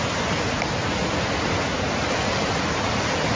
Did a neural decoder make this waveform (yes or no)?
no